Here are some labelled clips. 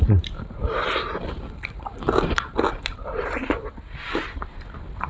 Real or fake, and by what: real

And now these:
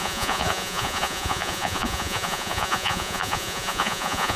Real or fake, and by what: fake, vocoder, Vocos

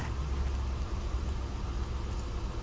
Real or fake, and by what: real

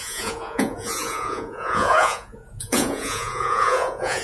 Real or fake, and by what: fake, vocoder, Vocos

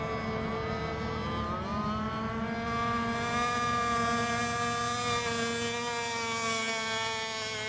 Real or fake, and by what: real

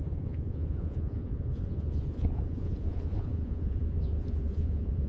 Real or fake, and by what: fake, vocoder, Vocos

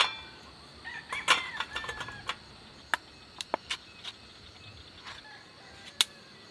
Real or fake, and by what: real